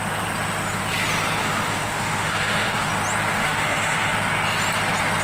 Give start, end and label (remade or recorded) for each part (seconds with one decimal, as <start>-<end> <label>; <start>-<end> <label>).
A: 0.0-1.4 recorded; 1.4-2.9 remade; 2.9-3.3 recorded; 3.3-4.1 remade; 4.1-5.2 recorded